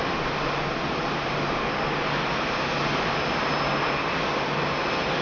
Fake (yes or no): no